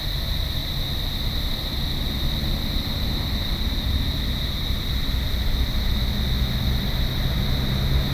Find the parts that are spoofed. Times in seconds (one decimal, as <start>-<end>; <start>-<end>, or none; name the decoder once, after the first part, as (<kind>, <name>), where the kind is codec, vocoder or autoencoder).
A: none

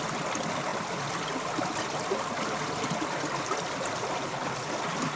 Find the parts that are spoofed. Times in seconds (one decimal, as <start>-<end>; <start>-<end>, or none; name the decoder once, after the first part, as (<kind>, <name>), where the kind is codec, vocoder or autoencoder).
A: none

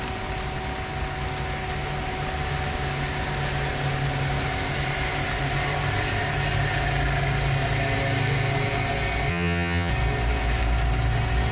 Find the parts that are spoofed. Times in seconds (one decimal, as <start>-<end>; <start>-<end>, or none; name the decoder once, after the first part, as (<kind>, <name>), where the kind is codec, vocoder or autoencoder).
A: 9.3-9.9 (vocoder, HiFi-GAN)

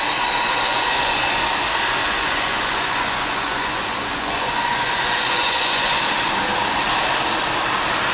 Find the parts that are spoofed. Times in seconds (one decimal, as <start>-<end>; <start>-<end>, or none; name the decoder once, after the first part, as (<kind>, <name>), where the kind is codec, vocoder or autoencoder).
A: 0.7-1.4 (vocoder, Vocos); 2.0-6.0

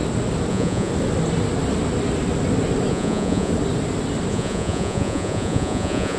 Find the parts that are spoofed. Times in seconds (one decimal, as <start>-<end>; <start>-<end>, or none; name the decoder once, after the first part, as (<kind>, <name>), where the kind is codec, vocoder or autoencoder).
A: 0.5-0.9 (vocoder, Vocos); 2.9-3.5; 4.3-6.2